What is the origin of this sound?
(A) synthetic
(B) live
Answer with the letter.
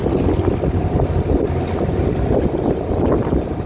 B